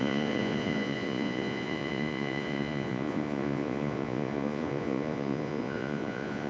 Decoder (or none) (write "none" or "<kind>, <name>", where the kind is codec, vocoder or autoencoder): vocoder, Vocos